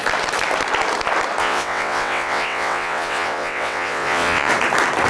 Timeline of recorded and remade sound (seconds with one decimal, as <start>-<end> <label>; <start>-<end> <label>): 0.0-1.4 recorded; 1.4-4.5 remade; 4.5-5.1 recorded